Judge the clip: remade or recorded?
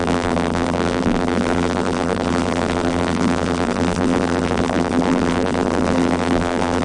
remade